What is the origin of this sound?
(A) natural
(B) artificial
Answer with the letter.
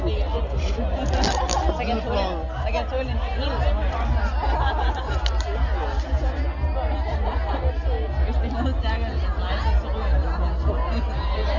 A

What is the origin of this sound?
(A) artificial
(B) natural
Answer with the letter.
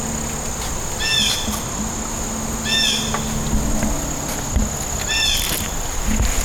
B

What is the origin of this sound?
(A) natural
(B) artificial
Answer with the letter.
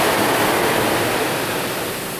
A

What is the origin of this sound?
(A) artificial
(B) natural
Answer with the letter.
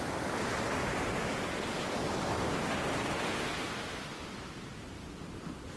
B